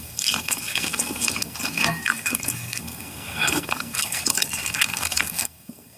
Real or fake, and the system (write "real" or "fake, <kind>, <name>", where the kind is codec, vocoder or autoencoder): fake, codec, SNAC